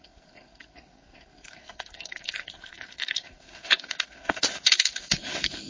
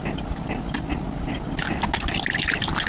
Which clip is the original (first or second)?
second